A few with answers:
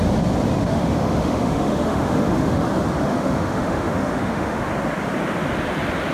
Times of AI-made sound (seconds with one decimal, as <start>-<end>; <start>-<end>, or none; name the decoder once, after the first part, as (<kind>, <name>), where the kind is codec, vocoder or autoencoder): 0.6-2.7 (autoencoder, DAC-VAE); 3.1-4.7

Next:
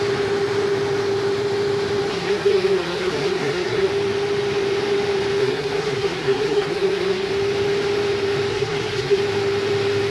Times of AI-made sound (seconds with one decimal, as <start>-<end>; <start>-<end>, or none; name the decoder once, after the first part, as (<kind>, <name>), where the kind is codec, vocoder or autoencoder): 2.1-3.9 (codec, SNAC); 5.4-7.3; 8.5-9.2

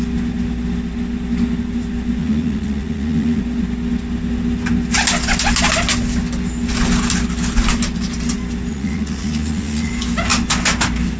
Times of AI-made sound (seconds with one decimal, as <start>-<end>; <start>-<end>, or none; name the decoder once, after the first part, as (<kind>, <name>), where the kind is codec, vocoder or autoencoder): 2.2-3.4 (vocoder, Vocos); 8.7-9.9

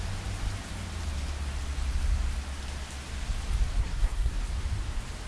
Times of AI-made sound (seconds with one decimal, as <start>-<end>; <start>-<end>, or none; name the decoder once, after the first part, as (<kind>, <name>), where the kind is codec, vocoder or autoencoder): 3.8-4.4 (codec, SNAC)